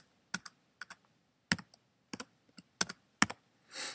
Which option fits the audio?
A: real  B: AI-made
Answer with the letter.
A